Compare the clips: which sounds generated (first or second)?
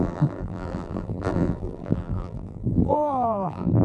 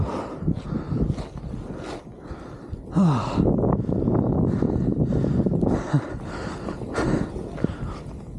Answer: first